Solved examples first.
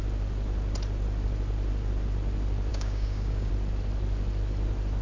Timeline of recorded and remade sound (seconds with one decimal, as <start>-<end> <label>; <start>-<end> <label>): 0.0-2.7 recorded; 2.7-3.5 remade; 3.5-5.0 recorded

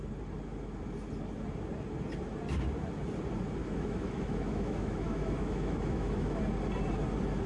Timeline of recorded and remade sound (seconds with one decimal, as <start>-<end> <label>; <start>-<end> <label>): 0.0-3.6 recorded; 3.6-6.4 remade; 6.4-7.5 recorded

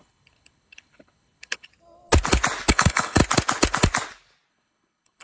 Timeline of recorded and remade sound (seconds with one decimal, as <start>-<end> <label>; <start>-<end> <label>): 0.0-1.7 remade; 1.7-2.7 recorded; 2.7-3.2 remade; 3.2-4.5 recorded; 4.5-5.2 remade

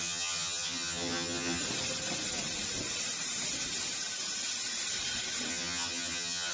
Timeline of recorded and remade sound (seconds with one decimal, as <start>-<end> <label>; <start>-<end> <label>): 0.0-1.6 remade; 1.6-5.5 recorded; 5.5-6.5 remade

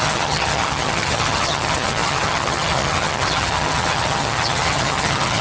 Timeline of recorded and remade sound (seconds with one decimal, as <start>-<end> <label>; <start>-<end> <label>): 0.0-5.4 remade

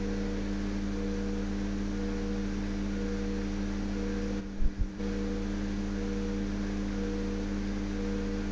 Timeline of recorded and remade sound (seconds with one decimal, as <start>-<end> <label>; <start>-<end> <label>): 0.0-4.4 recorded; 4.4-5.0 remade; 5.0-8.5 recorded